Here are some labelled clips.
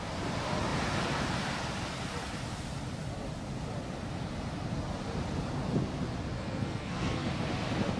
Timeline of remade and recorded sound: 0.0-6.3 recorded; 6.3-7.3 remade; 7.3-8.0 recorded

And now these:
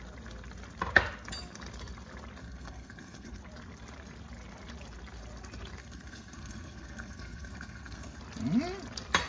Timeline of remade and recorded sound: 0.0-2.4 recorded; 2.4-3.4 remade; 3.4-5.8 recorded; 5.8-8.2 remade; 8.2-9.3 recorded

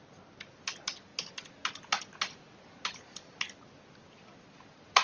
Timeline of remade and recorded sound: 0.0-5.0 recorded

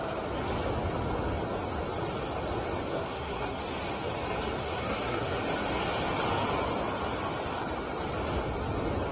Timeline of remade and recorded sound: 0.0-2.9 recorded; 2.9-3.6 remade; 3.6-4.6 recorded; 4.6-5.4 remade; 5.4-9.1 recorded

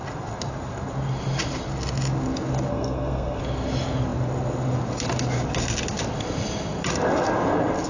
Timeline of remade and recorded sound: 0.0-2.7 recorded; 2.7-3.4 remade; 3.4-7.9 recorded